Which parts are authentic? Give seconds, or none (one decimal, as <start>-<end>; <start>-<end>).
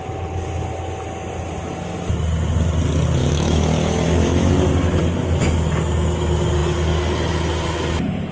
0.0-3.2; 4.5-8.3